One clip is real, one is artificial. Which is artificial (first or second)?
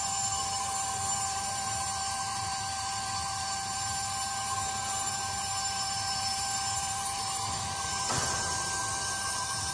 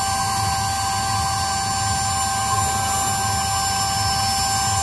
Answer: first